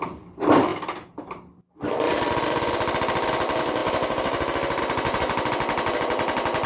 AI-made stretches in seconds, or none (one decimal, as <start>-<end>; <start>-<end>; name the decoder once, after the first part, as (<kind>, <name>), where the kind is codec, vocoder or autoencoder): none